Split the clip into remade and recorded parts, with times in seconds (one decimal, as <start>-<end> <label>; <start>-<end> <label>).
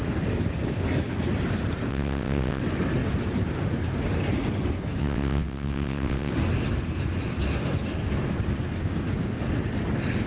0.0-1.9 recorded; 1.9-2.6 remade; 2.6-5.0 recorded; 5.0-6.3 remade; 6.3-10.3 recorded